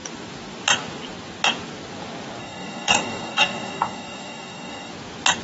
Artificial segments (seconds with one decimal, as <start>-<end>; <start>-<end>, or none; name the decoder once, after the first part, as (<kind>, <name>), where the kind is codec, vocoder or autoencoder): 2.4-4.9 (codec, DAC)